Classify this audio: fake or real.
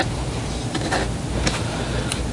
real